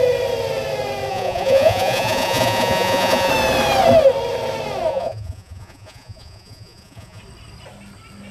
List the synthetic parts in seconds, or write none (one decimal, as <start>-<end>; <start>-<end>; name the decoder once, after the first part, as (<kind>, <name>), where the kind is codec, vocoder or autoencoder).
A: 1.1-3.3 (vocoder, Vocos); 4.9-7.2